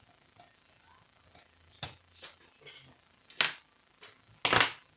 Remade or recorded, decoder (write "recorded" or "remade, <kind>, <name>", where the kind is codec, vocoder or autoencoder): recorded